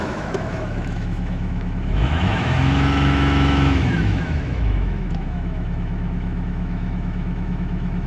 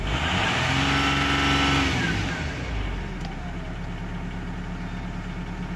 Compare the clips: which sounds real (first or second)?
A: second